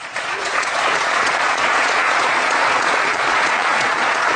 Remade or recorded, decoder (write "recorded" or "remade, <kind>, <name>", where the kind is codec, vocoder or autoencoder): remade, vocoder, Vocos